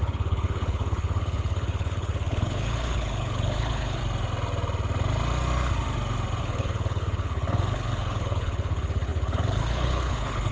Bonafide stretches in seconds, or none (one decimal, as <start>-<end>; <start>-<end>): 4.0-6.4